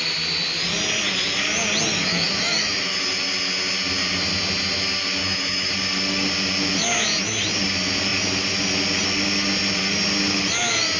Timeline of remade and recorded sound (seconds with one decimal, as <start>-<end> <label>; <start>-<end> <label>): 0.0-1.9 recorded; 1.9-3.0 remade; 3.0-5.2 recorded; 5.2-5.7 remade; 5.7-11.0 recorded